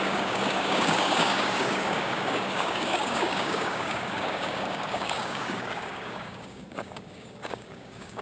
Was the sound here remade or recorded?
remade